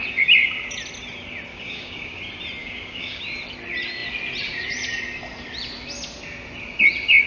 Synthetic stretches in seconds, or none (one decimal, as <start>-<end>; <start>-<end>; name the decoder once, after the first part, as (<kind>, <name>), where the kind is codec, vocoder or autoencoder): 1.5-2.2 (codec, DAC); 2.6-3.2